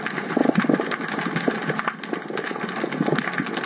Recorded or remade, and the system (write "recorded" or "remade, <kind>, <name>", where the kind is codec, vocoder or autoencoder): recorded